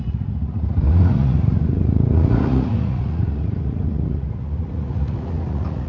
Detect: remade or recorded remade